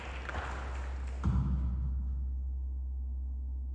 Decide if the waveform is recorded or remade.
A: recorded